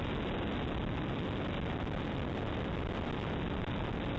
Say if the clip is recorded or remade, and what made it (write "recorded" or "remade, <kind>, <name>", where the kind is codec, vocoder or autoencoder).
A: recorded